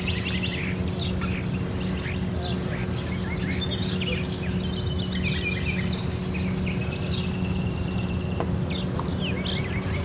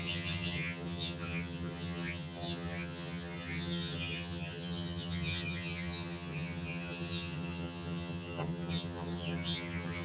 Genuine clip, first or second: first